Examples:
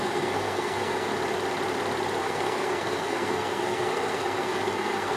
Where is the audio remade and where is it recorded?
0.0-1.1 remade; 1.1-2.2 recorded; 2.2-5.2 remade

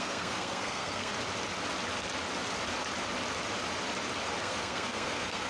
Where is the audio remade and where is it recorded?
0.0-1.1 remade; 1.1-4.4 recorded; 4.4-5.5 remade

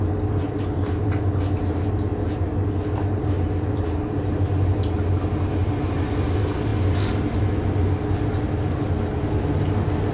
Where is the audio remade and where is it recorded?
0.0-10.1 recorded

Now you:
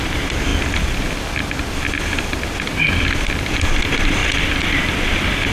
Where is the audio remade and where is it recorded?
0.0-0.5 remade; 0.5-3.8 recorded; 3.8-4.2 remade; 4.2-5.5 recorded

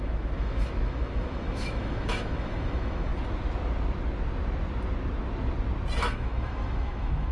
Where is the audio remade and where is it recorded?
0.0-3.1 remade; 3.1-6.0 recorded; 6.0-7.3 remade

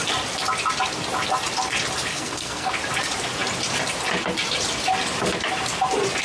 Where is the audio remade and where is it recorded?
0.0-2.1 recorded; 2.1-2.7 remade; 2.7-6.2 recorded